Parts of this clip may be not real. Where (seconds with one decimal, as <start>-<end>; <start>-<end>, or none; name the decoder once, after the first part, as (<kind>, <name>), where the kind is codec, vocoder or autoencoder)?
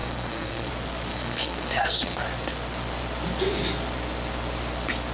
0.0-0.7 (codec, SNAC); 1.1-2.2